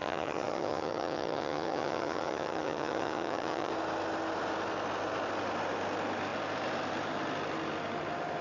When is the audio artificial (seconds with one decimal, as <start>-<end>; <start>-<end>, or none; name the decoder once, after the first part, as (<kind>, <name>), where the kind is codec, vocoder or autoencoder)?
0.0-3.7 (vocoder, HiFi-GAN)